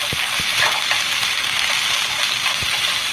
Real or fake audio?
real